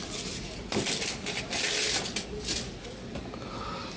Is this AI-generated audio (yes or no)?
no